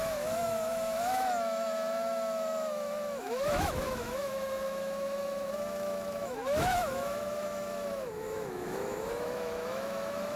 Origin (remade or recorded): remade